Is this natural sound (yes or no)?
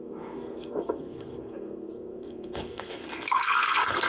no